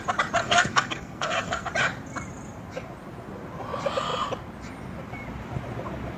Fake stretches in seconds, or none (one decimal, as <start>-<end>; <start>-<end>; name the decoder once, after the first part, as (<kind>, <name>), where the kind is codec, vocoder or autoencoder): 0.4-1.7 (codec, SNAC)